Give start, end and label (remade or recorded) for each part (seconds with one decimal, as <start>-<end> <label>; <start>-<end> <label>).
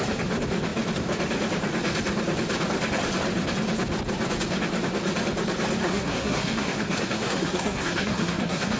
0.0-5.8 recorded; 5.8-8.8 remade